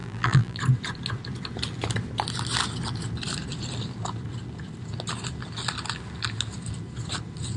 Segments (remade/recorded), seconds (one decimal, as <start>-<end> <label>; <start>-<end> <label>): 0.0-0.6 remade; 0.6-7.6 recorded